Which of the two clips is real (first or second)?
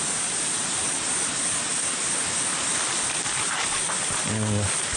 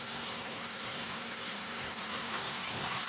first